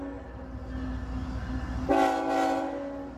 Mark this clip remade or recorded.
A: recorded